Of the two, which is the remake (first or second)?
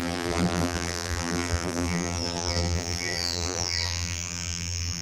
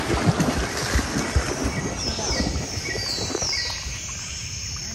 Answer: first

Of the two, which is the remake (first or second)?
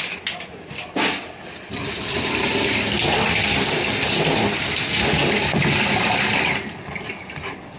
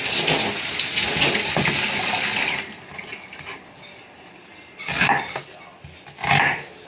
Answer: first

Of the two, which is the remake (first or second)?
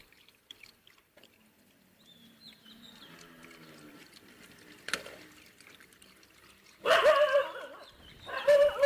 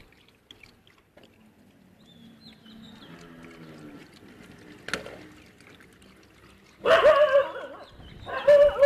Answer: first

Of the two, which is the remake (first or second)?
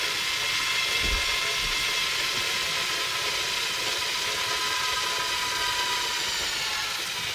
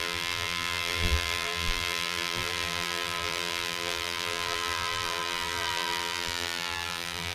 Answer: second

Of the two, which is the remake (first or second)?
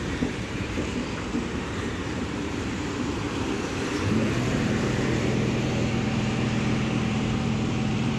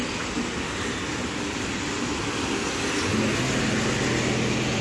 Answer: first